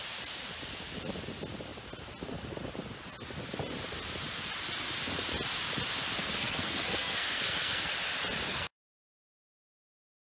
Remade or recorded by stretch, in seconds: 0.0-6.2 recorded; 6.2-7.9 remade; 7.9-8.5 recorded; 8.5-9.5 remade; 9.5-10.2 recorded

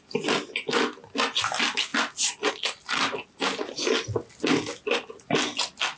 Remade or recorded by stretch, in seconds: 0.0-6.0 recorded

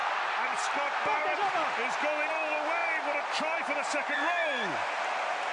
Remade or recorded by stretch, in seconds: 0.0-5.5 recorded

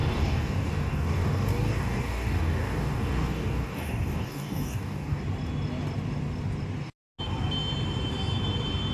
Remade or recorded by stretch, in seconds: 0.0-5.2 remade; 5.2-8.9 recorded

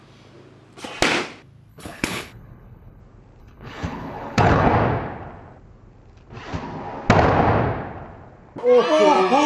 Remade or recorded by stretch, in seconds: 0.0-1.7 recorded; 1.7-3.0 remade; 3.0-3.4 recorded; 3.4-4.7 remade; 4.7-9.5 recorded

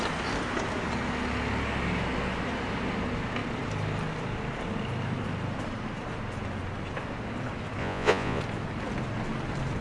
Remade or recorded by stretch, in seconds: 0.0-7.8 recorded; 7.8-8.4 remade; 8.4-9.8 recorded

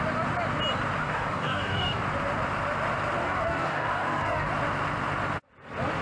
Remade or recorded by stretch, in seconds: 0.0-1.0 recorded; 1.0-2.0 remade; 2.0-3.2 recorded; 3.2-4.5 remade; 4.5-6.0 recorded

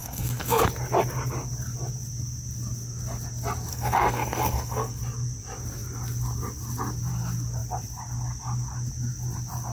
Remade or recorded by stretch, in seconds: 0.0-0.6 remade; 0.6-3.7 recorded; 3.7-5.0 remade; 5.0-9.7 recorded